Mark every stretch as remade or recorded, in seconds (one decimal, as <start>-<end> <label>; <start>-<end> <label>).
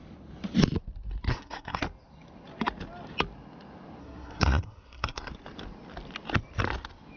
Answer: 0.0-1.3 recorded; 1.3-1.8 remade; 1.8-4.0 recorded; 4.0-5.3 remade; 5.3-7.2 recorded